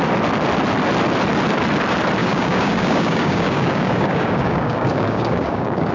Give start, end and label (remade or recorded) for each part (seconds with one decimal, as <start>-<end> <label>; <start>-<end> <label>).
0.0-2.2 recorded; 2.2-5.9 remade